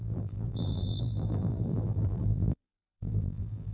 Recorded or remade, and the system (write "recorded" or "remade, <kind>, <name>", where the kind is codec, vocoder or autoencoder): remade, vocoder, BigVGAN v2